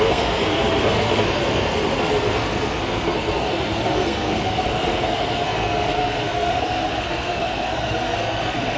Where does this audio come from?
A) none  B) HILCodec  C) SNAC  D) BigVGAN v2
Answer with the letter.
C